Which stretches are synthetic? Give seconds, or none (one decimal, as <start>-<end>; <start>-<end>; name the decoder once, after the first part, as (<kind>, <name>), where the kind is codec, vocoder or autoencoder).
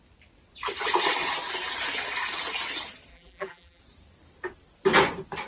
3.1-3.8 (vocoder, BigVGAN v2)